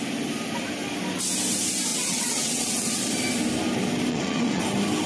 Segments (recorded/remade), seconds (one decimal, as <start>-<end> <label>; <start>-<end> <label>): 0.0-1.9 recorded; 1.9-3.0 remade; 3.0-4.1 recorded; 4.1-4.6 remade; 4.6-5.1 recorded